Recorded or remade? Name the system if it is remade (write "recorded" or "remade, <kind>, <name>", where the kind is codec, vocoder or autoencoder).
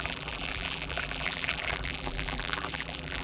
remade, vocoder, BigVGAN v2